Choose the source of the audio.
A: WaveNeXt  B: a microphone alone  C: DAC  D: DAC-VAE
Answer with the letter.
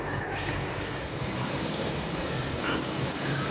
C